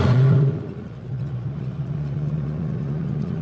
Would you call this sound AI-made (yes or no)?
yes